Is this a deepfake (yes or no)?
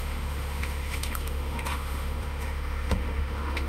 yes